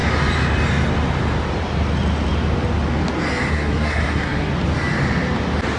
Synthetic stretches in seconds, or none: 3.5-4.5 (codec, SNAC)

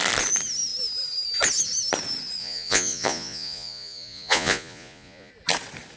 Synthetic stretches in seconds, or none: 2.4-5.3 (vocoder, Vocos)

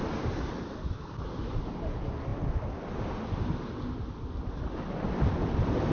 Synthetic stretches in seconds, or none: none

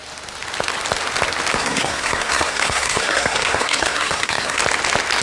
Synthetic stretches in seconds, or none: 1.5-4.6 (codec, SNAC)

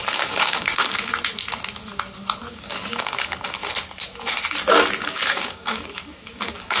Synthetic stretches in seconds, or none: 0.0-1.1 (codec, DAC); 2.5-3.6; 5.0-6.8

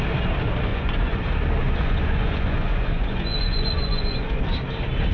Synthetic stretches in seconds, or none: 0.7-1.2 (vocoder, Vocos); 1.6-4.4